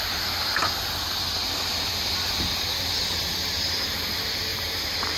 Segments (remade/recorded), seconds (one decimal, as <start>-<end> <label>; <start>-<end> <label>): 0.0-4.5 recorded; 4.5-5.2 remade